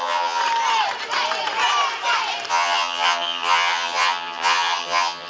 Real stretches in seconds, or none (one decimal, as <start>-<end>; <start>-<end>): 0.4-2.5